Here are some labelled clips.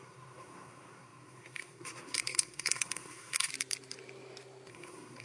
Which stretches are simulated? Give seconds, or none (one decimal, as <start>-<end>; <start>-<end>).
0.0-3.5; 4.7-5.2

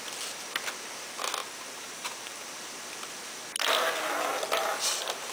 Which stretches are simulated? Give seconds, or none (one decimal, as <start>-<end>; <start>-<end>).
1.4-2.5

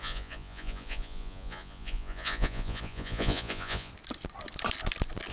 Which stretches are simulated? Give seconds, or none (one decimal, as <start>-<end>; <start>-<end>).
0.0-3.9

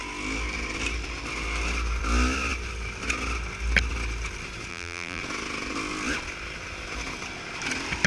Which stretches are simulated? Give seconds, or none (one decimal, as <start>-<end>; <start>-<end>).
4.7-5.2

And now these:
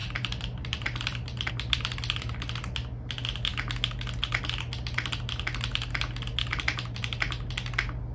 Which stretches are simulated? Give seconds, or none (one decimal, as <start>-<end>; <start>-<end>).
0.0-1.5; 6.5-7.5

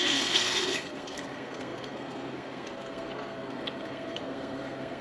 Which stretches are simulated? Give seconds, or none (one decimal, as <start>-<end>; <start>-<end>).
0.0-5.0